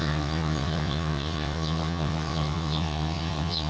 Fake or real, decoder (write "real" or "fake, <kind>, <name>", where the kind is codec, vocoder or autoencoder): fake, vocoder, WaveNeXt